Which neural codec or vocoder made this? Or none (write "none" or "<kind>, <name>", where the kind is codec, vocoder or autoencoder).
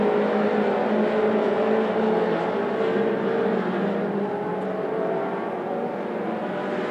none